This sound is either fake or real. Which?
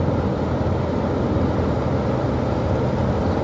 real